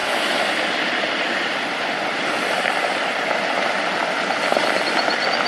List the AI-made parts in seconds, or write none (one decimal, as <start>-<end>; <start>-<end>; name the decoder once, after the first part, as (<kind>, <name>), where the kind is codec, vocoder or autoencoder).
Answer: none